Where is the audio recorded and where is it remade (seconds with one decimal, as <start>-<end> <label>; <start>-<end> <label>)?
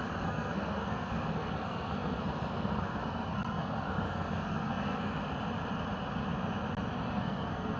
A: 0.0-5.2 remade; 5.2-7.1 recorded; 7.1-7.8 remade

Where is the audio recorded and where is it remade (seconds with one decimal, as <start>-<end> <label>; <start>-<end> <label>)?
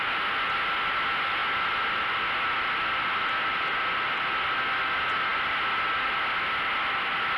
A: 0.0-7.4 recorded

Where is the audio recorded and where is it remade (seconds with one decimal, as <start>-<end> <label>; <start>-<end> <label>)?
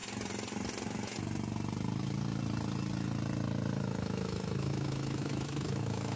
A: 0.0-3.7 recorded; 3.7-6.2 remade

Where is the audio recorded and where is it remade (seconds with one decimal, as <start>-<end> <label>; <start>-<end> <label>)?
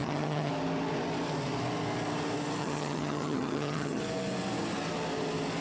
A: 0.0-0.5 remade; 0.5-2.6 recorded; 2.6-4.0 remade; 4.0-5.6 recorded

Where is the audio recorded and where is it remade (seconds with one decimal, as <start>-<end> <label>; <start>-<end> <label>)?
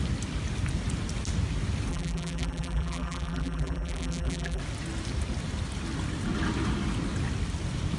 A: 0.0-1.9 recorded; 1.9-4.6 remade; 4.6-8.0 recorded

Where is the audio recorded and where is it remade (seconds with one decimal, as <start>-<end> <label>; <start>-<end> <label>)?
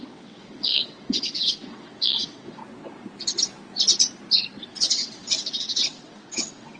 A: 0.0-2.6 remade; 2.6-4.7 recorded; 4.7-6.8 remade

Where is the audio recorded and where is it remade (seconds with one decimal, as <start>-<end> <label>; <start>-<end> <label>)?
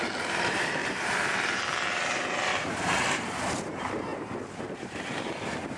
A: 0.0-4.1 remade; 4.1-4.6 recorded; 4.6-5.8 remade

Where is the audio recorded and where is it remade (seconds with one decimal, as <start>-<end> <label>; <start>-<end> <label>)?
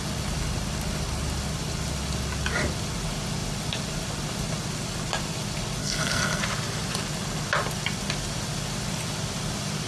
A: 0.0-5.8 recorded; 5.8-6.4 remade; 6.4-9.9 recorded